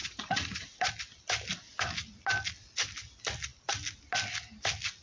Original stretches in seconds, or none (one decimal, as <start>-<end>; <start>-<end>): 0.9-5.0